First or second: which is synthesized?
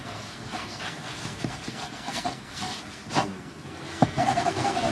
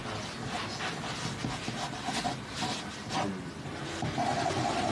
first